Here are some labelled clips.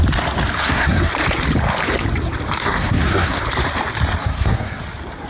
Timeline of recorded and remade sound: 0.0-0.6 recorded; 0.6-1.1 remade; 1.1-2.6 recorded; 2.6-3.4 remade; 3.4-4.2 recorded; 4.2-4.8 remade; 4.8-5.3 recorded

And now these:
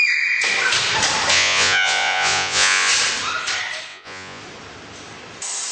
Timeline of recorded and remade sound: 0.0-1.3 recorded; 1.3-2.9 remade; 2.9-3.9 recorded; 3.9-4.4 remade; 4.4-5.7 recorded